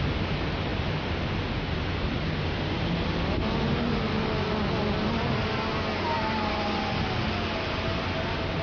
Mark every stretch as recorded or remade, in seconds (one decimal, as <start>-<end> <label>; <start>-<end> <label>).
0.0-0.7 recorded; 0.7-1.3 remade; 1.3-8.6 recorded